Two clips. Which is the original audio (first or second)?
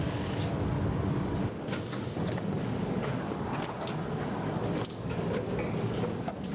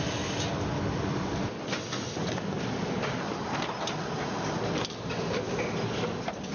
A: second